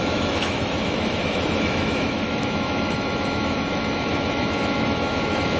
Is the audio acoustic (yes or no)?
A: no